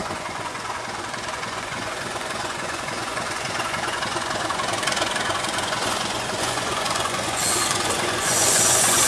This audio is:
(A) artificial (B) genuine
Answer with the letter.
A